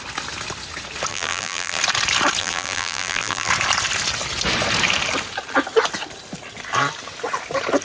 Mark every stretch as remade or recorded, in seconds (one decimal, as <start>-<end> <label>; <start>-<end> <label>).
0.0-1.1 recorded; 1.1-1.8 remade; 1.8-2.4 recorded; 2.4-3.5 remade; 3.5-7.8 recorded